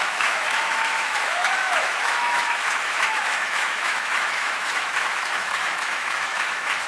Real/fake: fake